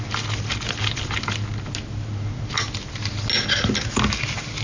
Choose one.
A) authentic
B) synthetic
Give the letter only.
A